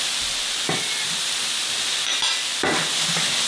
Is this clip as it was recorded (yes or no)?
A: yes